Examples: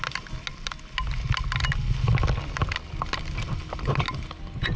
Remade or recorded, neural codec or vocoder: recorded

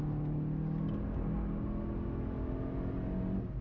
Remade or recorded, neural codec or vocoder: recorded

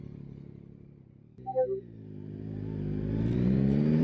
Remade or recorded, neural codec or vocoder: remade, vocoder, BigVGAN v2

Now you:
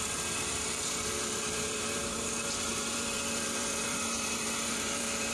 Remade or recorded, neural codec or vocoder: remade, vocoder, BigVGAN v2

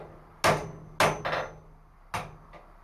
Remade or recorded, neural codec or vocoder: recorded